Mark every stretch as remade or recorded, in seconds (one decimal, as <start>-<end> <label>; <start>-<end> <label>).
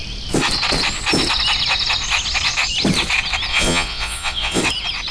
0.0-3.5 recorded; 3.5-4.6 remade; 4.6-5.1 recorded